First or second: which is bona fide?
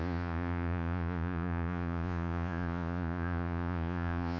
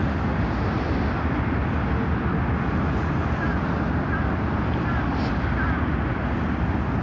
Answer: second